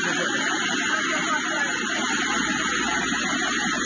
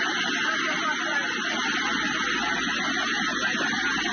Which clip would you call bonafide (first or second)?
second